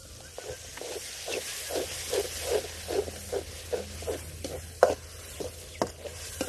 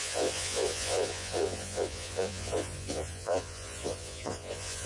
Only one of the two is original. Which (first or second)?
first